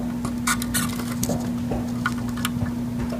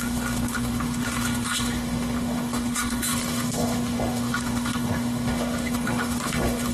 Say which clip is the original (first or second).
first